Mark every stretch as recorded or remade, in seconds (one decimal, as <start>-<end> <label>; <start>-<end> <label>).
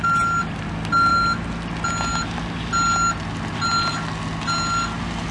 0.0-5.3 recorded